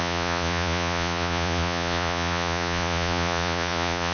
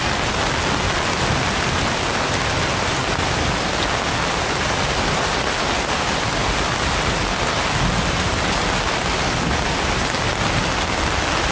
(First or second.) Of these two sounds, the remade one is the first